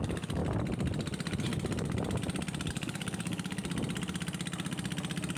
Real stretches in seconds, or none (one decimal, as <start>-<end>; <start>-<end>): 0.4-2.7; 3.6-5.4